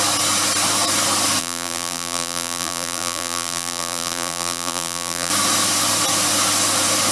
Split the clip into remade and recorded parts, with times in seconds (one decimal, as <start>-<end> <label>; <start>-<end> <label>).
0.0-1.4 recorded; 1.4-5.3 remade; 5.3-7.1 recorded